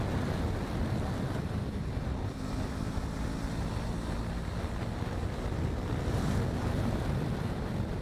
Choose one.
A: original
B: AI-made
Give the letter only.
A